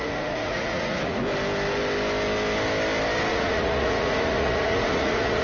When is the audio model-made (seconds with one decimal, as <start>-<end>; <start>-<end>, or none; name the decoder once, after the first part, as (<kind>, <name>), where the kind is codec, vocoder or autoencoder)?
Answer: 0.0-1.2 (vocoder, Vocos); 3.3-5.4